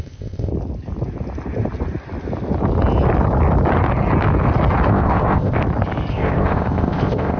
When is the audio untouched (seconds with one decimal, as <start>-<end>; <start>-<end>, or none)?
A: 0.5-4.9; 5.6-6.1